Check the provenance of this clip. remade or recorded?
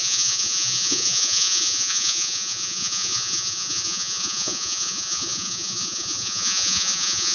remade